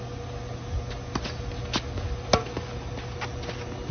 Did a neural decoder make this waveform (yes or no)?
no